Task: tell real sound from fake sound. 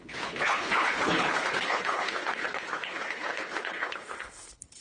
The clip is fake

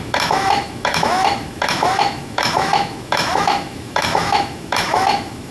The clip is fake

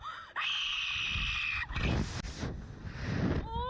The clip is real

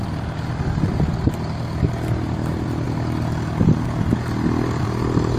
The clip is real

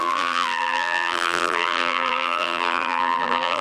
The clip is fake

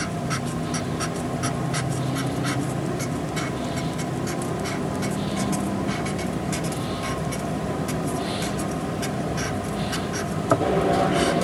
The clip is real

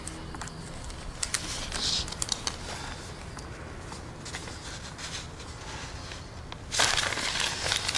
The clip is real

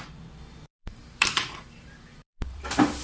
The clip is fake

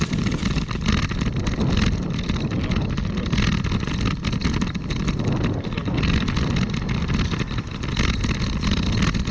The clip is real